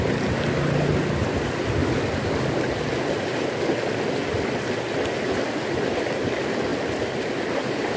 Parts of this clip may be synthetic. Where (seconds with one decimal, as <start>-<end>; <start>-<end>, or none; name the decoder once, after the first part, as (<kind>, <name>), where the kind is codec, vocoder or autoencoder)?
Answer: none